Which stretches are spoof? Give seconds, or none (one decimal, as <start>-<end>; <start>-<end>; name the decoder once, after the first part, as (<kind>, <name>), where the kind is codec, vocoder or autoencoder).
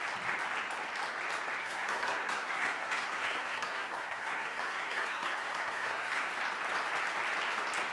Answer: 1.6-6.3 (codec, SNAC)